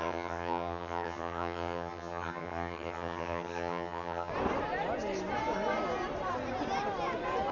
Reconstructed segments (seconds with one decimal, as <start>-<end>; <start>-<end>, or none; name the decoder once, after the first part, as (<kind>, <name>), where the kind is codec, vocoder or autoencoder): 0.0-4.3 (vocoder, HiFi-GAN)